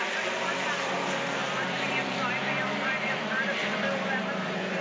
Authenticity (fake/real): fake